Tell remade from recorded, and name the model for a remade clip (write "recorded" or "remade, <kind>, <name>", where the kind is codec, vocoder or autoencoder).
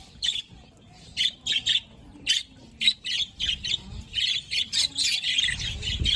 recorded